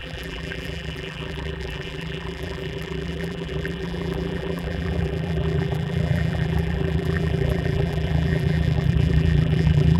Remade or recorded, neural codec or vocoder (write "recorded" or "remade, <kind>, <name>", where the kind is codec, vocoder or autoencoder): remade, vocoder, BigVGAN v2